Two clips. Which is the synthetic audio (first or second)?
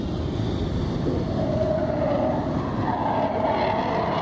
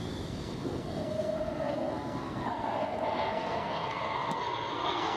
second